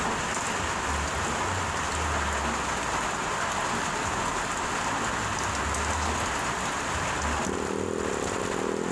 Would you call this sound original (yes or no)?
yes